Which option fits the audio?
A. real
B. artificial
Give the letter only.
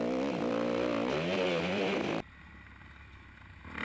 A